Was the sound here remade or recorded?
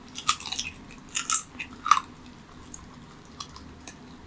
recorded